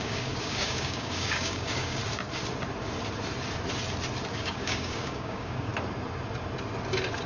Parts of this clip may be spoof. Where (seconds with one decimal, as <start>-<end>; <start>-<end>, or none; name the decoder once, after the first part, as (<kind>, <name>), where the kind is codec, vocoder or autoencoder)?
0.0-2.0 (codec, DAC); 4.3-5.7